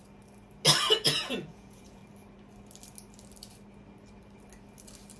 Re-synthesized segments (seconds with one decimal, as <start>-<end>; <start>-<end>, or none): 0.8-2.0